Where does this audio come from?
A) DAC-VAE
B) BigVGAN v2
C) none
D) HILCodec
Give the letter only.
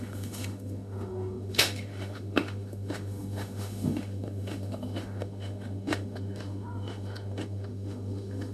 A